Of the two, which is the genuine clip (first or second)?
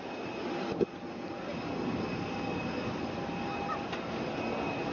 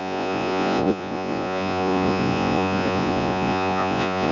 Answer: first